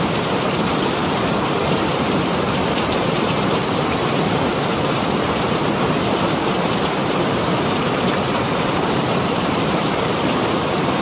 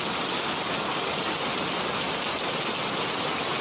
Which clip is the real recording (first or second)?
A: second